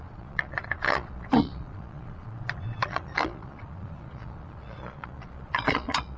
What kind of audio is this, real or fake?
fake